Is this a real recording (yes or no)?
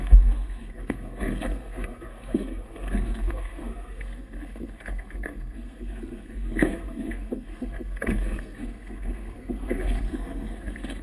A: no